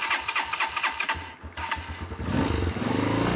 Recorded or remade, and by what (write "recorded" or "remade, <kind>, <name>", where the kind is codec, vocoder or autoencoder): recorded